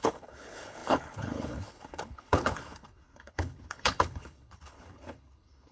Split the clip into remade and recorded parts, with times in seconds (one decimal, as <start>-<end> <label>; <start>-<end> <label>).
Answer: 0.0-5.7 remade